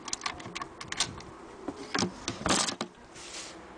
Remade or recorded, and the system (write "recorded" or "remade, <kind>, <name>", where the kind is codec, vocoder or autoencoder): recorded